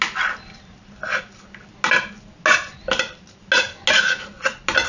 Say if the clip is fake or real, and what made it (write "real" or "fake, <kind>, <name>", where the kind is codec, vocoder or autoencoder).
real